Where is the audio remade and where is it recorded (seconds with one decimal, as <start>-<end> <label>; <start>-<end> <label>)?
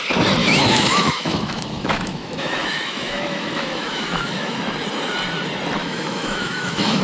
0.0-0.4 recorded; 0.4-4.6 remade; 4.6-5.8 recorded; 5.8-7.0 remade